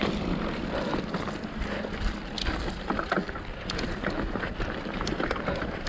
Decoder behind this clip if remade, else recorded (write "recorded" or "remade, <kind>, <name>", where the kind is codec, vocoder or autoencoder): recorded